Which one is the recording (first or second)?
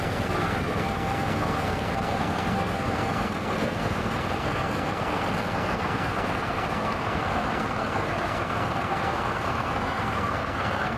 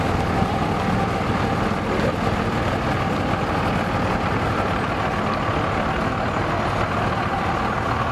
second